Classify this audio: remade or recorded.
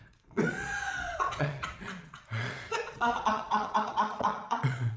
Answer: remade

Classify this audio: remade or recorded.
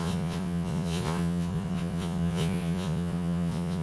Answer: remade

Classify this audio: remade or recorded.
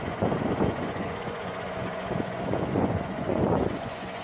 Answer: remade